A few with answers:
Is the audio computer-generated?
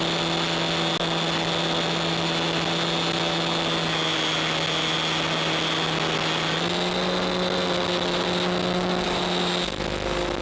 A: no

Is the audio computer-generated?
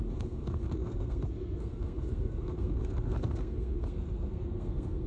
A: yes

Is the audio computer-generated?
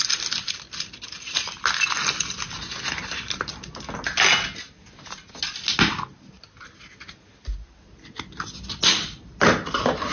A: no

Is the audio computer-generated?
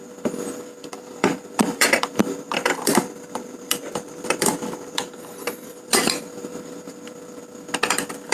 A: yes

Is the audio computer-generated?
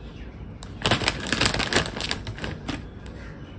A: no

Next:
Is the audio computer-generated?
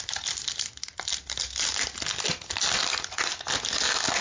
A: no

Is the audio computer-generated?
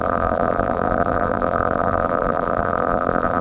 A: yes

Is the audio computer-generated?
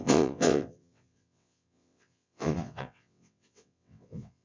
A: yes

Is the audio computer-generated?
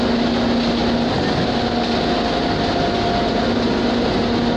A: no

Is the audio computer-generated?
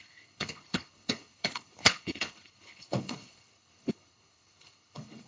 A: yes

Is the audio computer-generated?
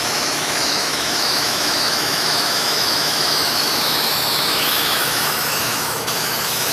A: yes